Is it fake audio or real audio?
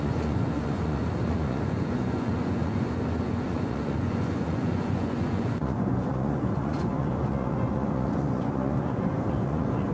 fake